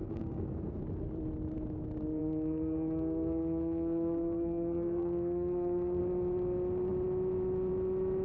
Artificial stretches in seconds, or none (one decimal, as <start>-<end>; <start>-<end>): 0.0-0.8; 2.2-6.0